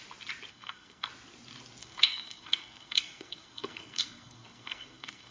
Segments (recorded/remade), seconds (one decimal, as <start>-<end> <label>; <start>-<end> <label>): 0.0-0.5 recorded; 0.5-1.1 remade; 1.1-1.8 recorded; 1.8-5.3 remade